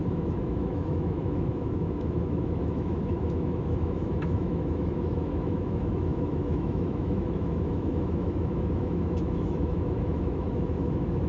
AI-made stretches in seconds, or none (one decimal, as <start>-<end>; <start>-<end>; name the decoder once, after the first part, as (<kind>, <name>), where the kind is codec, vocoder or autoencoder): 0.0-11.3 (autoencoder, DAC-VAE)